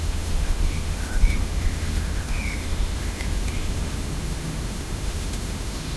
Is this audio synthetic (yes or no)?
yes